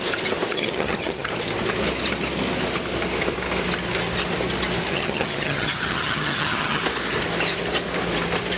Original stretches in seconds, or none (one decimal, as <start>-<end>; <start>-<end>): 0.0-0.5; 1.3-4.9; 6.8-8.6